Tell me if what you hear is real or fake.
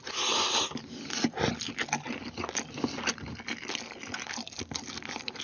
real